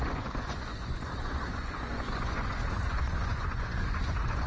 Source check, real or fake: fake